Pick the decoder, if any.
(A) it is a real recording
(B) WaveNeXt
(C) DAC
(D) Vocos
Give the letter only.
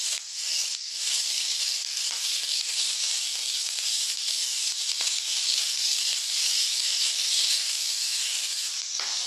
C